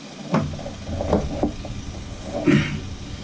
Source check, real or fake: real